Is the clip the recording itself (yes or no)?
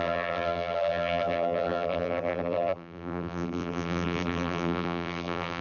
no